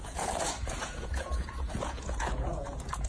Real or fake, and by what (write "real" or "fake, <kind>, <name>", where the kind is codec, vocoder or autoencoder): fake, vocoder, Vocos